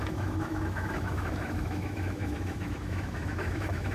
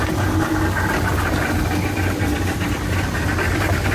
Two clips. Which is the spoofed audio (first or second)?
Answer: first